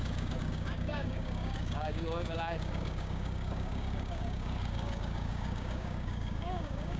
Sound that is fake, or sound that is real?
fake